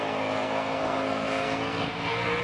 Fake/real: fake